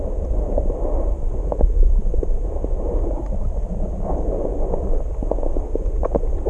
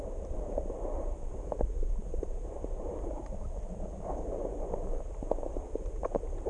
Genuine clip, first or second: first